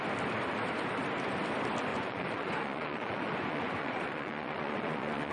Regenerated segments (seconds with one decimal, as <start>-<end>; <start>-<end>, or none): 1.9-5.3